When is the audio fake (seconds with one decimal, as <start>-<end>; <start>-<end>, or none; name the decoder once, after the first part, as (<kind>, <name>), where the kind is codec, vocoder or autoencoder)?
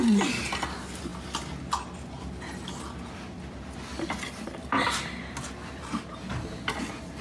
none